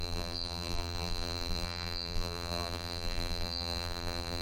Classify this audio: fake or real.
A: fake